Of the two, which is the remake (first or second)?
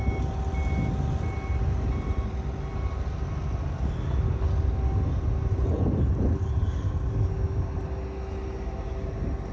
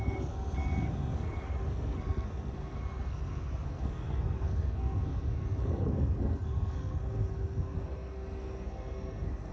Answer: second